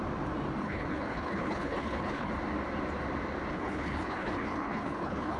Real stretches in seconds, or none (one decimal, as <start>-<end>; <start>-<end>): 0.0-0.6; 2.3-3.5